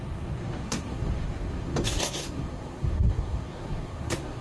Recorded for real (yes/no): no